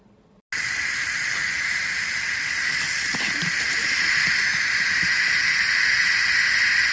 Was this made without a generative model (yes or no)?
yes